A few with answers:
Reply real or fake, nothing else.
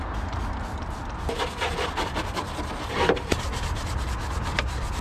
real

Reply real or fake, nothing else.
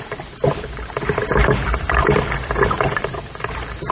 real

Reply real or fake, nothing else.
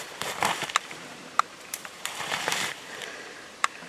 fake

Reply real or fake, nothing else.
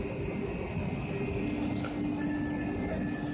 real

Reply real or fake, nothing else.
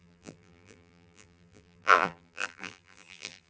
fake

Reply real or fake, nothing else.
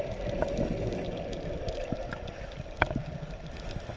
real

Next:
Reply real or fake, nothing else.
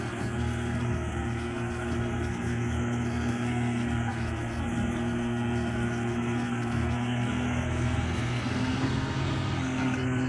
fake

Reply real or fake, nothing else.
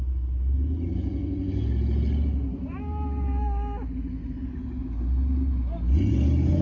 real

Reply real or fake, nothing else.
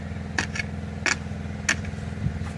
real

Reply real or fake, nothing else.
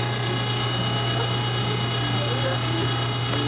real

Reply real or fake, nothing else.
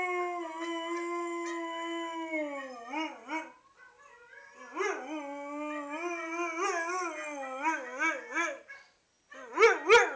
real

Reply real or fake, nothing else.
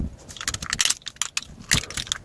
real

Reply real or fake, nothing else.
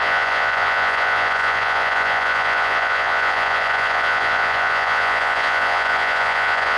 fake